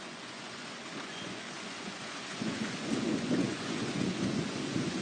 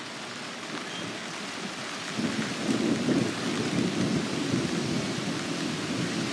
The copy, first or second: first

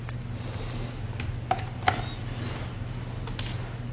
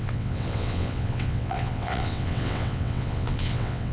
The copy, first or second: second